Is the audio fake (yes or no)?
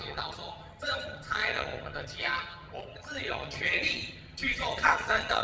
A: yes